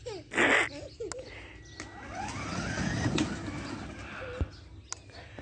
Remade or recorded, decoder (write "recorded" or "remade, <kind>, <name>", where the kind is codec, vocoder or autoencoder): recorded